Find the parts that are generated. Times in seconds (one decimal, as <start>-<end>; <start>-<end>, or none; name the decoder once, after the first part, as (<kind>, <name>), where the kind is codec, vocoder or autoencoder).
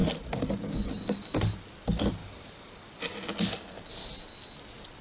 0.0-0.6 (vocoder, BigVGAN v2); 2.2-3.9